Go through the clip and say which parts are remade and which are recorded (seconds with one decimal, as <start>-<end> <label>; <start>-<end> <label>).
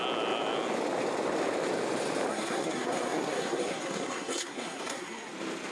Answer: 0.0-2.3 recorded; 2.3-5.3 remade; 5.3-5.7 recorded